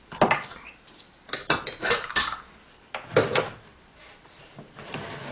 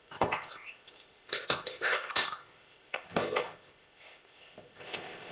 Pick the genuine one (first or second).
first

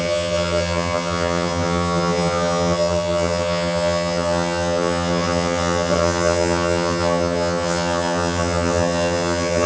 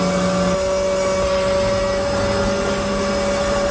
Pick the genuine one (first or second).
second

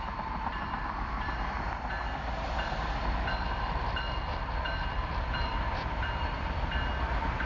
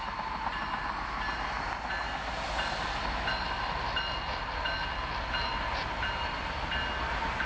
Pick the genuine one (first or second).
second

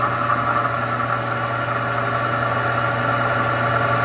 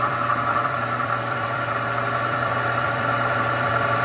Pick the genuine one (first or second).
first